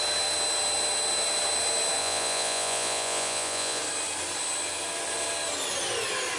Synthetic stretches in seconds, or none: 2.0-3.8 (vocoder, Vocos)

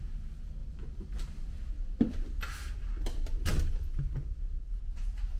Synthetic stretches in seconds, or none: 0.6-1.7 (vocoder, BigVGAN v2); 3.5-4.0

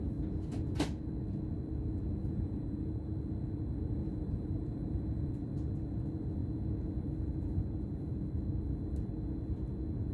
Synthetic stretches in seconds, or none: 2.2-2.8 (vocoder, BigVGAN v2); 4.0-5.3

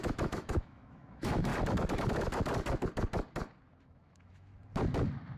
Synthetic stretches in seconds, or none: 0.0-1.5 (autoencoder, DAC-VAE); 3.8-4.5

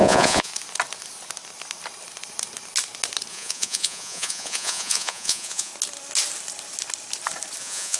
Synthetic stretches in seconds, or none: 0.0-0.5 (vocoder, Vocos); 3.3-5.7; 7.6-8.0

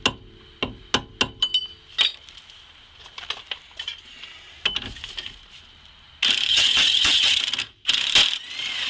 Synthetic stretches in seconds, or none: 6.5-7.4 (vocoder, HiFi-GAN)

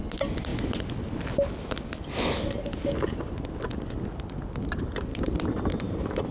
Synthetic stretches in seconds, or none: 5.1-6.3 (vocoder, BigVGAN v2)